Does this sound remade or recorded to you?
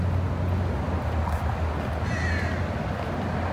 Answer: recorded